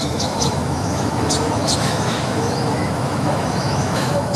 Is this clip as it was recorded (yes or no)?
no